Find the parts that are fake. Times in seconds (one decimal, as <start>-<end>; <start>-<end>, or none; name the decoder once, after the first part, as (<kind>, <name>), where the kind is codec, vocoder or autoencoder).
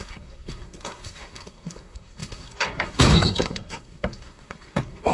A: 0.0-5.1 (codec, SNAC)